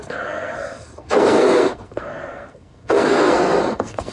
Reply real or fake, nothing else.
fake